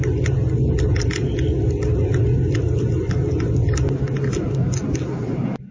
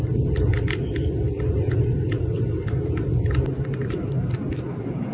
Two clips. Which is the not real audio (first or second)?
second